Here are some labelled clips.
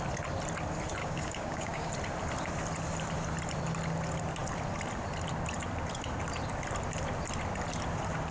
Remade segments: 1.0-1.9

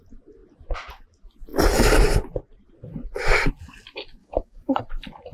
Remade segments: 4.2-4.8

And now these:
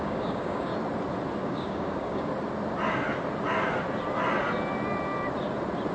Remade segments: 0.0-0.7; 1.4-2.3